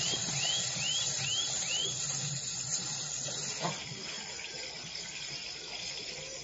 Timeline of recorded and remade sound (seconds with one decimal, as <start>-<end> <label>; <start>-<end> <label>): 0.0-6.4 recorded